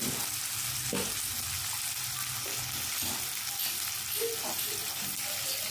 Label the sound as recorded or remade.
recorded